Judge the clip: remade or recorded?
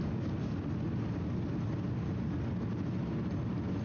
recorded